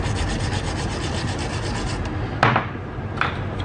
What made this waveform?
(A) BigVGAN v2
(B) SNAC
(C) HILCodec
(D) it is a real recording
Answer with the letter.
D